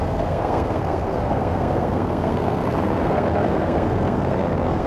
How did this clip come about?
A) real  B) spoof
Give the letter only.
B